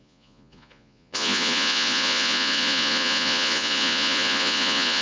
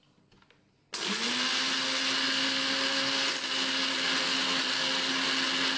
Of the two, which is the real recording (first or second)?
second